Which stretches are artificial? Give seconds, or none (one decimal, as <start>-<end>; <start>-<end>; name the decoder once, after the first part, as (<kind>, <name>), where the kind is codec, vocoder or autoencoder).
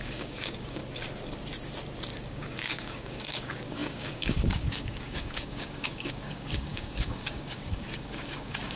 0.0-0.8 (codec, DAC); 2.3-8.8